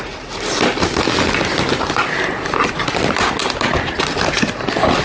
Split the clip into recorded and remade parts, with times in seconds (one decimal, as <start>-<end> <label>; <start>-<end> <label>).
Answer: 0.0-5.0 recorded